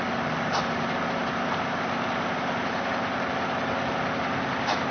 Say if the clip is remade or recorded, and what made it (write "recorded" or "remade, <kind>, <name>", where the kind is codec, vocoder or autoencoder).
recorded